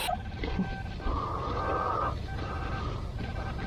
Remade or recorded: recorded